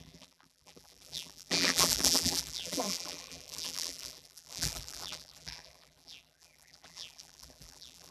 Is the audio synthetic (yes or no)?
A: yes